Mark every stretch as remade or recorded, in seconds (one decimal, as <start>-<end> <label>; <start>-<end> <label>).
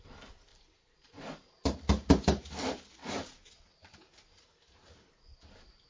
0.0-0.5 recorded; 0.5-2.5 remade; 2.5-2.9 recorded; 2.9-5.0 remade; 5.0-5.9 recorded